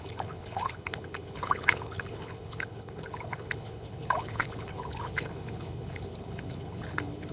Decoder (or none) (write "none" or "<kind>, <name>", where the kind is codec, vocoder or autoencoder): codec, HILCodec